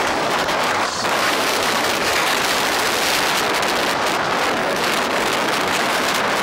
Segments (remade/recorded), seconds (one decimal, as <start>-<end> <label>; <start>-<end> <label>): 0.0-2.4 remade; 2.4-4.6 recorded; 4.6-6.0 remade; 6.0-6.4 recorded